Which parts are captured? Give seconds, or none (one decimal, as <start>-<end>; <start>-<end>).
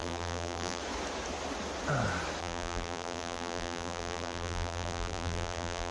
0.8-2.4